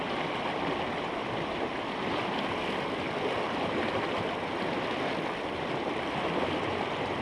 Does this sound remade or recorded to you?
recorded